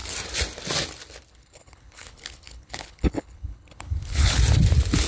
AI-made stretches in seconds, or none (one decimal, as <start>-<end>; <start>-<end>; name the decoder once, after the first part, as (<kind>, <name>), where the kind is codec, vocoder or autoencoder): 1.3-4.4 (codec, HILCodec)